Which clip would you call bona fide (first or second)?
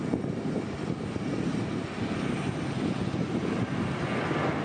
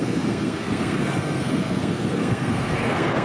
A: first